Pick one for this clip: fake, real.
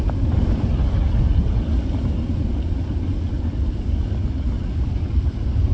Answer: real